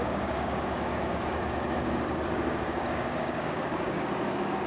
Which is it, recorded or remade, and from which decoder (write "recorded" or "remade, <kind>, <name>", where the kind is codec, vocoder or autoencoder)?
remade, codec, DAC